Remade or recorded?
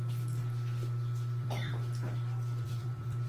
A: remade